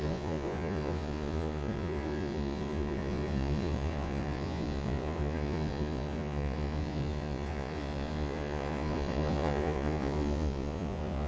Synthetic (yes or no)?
yes